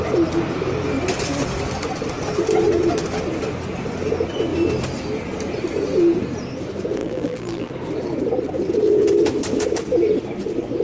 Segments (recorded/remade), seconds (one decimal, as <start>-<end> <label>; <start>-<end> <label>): 0.0-7.0 recorded; 7.0-7.7 remade; 7.7-10.8 recorded